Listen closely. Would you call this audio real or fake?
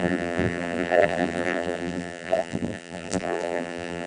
fake